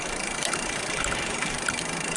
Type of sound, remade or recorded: remade